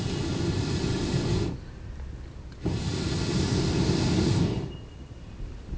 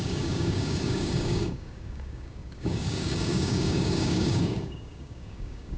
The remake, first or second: second